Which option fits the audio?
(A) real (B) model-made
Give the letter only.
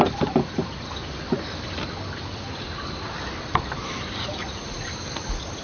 A